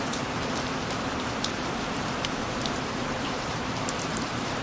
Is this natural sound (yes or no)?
no